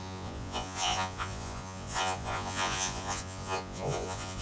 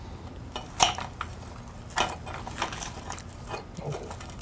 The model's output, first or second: first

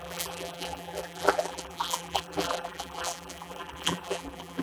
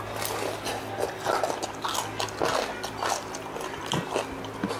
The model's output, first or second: first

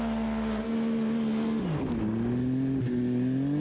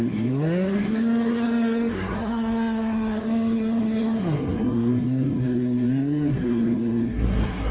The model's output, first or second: second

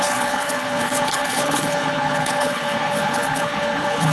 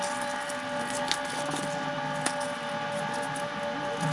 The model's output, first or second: first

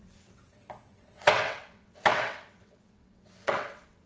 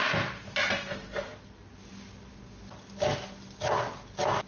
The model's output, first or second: first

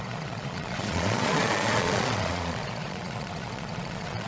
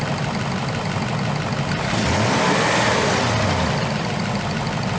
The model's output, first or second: first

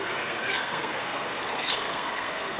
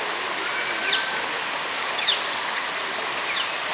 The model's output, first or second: first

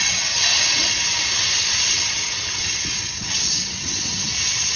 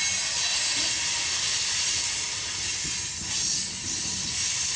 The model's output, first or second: first